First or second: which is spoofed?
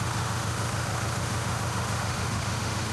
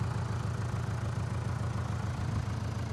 first